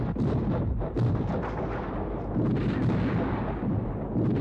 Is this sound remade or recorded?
recorded